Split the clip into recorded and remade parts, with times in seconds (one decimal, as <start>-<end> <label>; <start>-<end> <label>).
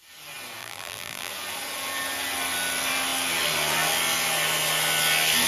0.0-0.6 recorded; 0.6-1.3 remade; 1.3-5.5 recorded